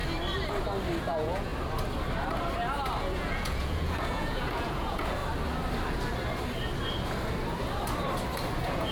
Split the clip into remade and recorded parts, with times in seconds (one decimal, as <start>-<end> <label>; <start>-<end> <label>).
0.0-1.1 recorded; 1.1-1.5 remade; 1.5-3.0 recorded; 3.0-5.2 remade; 5.2-8.5 recorded; 8.5-8.9 remade

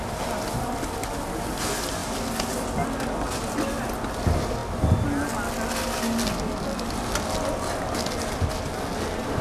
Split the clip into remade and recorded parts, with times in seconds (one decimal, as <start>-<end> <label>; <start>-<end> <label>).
0.0-9.4 recorded

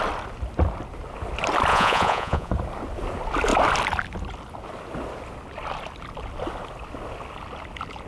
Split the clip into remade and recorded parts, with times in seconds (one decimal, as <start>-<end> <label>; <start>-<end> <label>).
0.0-1.7 recorded; 1.7-2.5 remade; 2.5-8.1 recorded

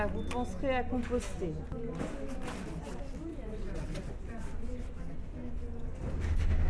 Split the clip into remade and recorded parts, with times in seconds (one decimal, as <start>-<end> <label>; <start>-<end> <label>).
0.0-3.3 recorded; 3.3-4.1 remade; 4.1-6.7 recorded

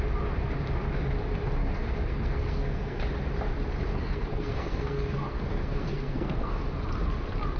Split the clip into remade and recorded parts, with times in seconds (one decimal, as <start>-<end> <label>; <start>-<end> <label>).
0.0-1.6 recorded; 1.6-3.0 remade; 3.0-3.9 recorded; 3.9-6.6 remade; 6.6-7.6 recorded

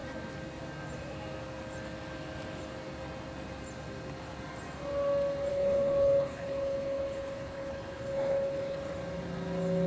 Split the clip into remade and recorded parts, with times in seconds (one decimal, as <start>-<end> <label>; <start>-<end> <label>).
0.0-5.5 recorded; 5.5-8.9 remade; 8.9-9.9 recorded

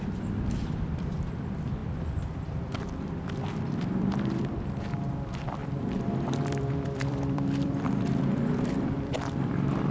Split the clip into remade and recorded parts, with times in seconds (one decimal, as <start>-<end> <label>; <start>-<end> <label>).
0.0-9.9 remade

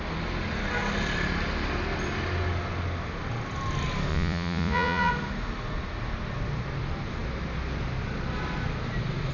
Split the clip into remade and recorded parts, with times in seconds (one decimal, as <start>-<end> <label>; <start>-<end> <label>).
0.0-4.1 recorded; 4.1-5.1 remade; 5.1-9.3 recorded